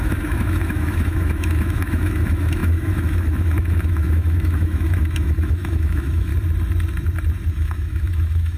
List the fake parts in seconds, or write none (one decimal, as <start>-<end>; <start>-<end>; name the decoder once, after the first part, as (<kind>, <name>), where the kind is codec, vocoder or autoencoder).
0.0-6.3 (autoencoder, DAC-VAE); 7.5-8.6